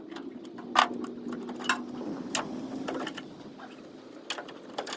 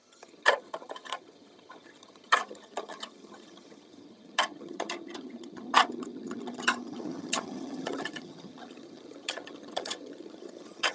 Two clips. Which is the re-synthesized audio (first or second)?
second